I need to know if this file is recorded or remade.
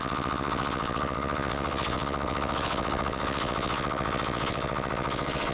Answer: remade